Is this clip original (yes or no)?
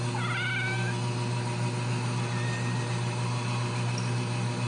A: yes